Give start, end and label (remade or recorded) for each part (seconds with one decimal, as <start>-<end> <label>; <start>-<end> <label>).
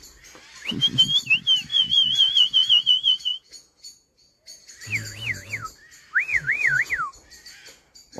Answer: 0.0-1.7 recorded; 1.7-4.7 remade; 4.7-6.3 recorded; 6.3-6.9 remade; 6.9-8.2 recorded